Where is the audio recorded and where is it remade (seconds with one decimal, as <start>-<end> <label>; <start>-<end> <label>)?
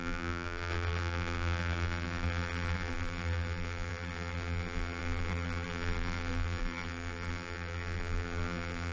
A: 0.0-8.9 remade